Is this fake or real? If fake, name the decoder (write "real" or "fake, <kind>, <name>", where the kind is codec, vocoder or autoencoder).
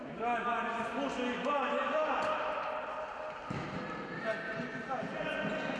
real